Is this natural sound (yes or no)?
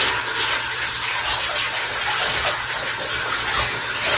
yes